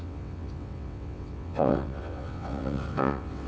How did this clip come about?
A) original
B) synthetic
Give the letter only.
B